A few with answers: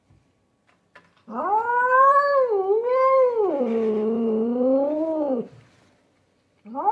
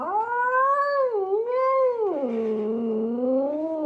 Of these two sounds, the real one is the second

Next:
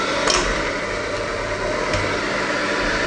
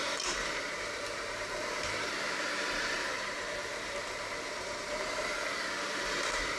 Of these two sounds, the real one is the first